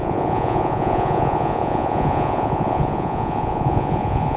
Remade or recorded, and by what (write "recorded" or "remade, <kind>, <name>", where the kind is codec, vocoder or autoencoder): remade, vocoder, Vocos